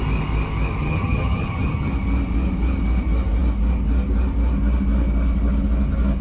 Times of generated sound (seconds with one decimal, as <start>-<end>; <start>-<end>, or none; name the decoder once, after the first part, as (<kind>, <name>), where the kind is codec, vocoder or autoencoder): 0.8-1.9 (vocoder, HiFi-GAN)